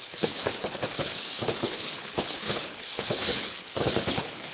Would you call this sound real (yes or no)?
no